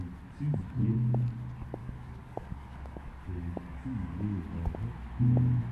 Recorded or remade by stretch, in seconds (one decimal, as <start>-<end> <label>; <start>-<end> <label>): 0.0-1.8 recorded; 1.8-4.2 remade; 4.2-5.7 recorded

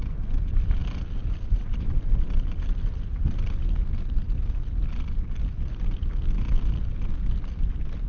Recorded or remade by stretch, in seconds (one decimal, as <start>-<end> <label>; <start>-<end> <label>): 0.0-8.1 recorded

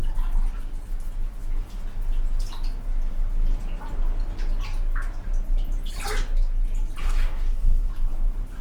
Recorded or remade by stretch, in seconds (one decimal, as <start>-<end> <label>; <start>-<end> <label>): 0.0-7.0 recorded; 7.0-7.9 remade; 7.9-8.6 recorded